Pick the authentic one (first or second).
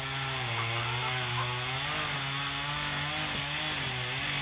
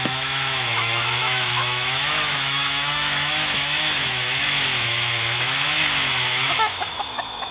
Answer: first